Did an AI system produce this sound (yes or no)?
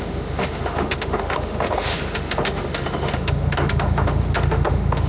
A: yes